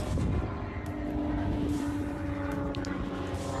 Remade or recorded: recorded